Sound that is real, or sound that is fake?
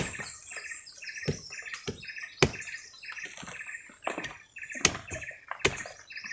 real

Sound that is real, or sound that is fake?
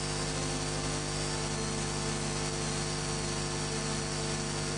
real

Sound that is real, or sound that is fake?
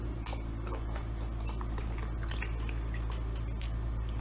real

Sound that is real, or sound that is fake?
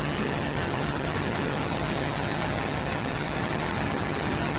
fake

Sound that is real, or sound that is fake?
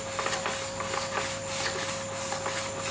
real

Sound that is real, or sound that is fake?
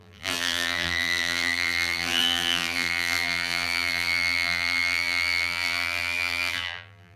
fake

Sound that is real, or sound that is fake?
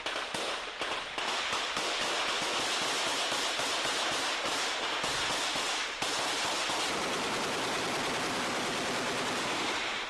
real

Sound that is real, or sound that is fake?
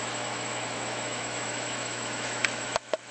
fake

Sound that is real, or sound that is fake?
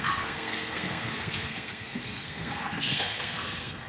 fake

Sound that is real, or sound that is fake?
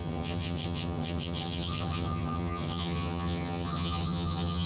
fake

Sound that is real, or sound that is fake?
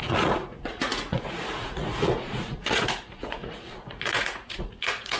fake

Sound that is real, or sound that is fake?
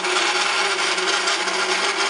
real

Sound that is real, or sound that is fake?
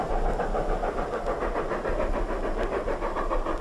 real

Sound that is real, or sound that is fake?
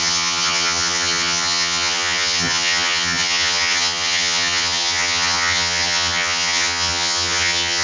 fake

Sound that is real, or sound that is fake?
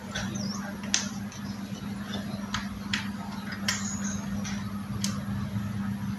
real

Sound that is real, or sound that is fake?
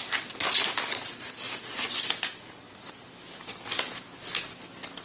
real